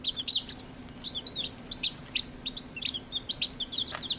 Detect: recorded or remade recorded